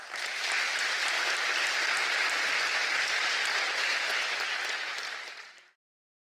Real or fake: real